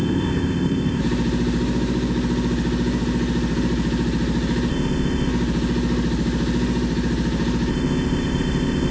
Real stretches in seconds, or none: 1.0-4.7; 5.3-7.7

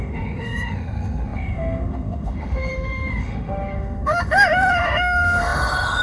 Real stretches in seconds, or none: none

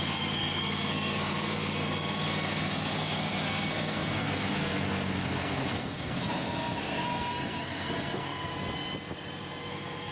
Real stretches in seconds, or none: 8.5-9.7

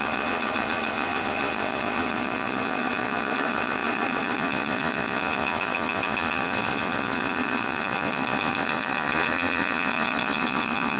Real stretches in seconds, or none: none

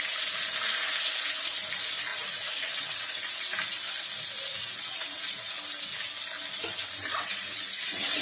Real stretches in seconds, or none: 0.0-2.1; 3.2-4.5; 5.5-7.1

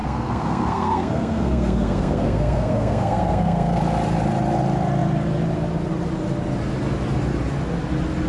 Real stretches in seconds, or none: 3.8-8.3

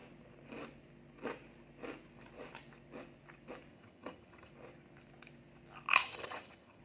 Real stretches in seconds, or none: 0.0-3.7; 4.5-6.0